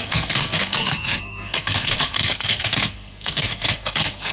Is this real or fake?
fake